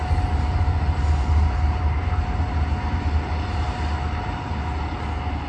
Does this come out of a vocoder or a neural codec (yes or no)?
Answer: no